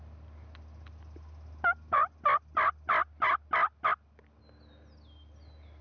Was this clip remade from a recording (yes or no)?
no